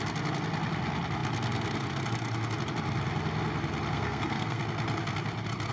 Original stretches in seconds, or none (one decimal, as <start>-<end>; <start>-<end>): 0.0-3.9; 4.6-5.7